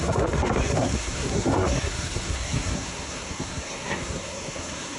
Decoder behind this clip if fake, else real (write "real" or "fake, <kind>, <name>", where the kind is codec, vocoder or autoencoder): fake, codec, SNAC